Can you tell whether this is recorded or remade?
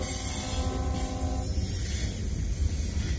recorded